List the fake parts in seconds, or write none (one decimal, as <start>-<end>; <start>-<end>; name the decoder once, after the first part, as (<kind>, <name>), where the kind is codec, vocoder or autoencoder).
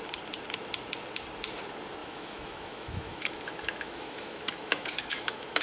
2.0-5.6 (autoencoder, DAC-VAE)